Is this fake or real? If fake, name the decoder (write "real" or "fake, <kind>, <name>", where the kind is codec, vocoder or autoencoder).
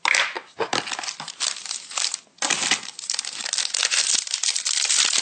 real